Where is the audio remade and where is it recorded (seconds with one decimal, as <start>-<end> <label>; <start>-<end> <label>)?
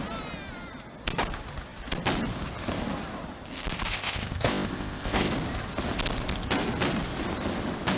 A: 0.0-3.9 recorded; 3.9-5.3 remade; 5.3-8.0 recorded